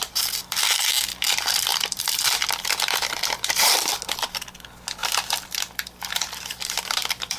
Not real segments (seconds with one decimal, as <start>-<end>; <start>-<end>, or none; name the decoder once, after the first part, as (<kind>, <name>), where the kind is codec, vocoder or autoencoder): 1.7-4.0 (vocoder, BigVGAN v2); 5.0-7.4